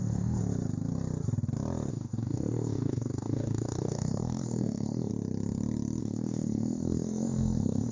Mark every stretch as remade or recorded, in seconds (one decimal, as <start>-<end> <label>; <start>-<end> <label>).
0.0-0.4 remade; 0.4-1.9 recorded; 1.9-5.1 remade; 5.1-6.0 recorded; 6.0-7.9 remade